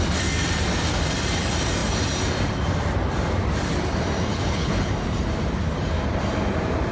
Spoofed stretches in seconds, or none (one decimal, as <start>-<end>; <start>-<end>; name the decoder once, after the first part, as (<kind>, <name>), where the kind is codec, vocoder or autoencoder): 4.3-4.9 (codec, HILCodec)